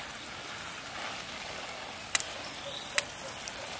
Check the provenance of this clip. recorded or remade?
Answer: recorded